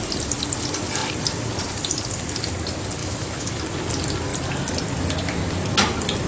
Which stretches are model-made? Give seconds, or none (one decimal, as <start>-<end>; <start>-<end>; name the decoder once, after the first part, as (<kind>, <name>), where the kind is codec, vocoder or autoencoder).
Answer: 3.0-3.6 (autoencoder, DAC-VAE)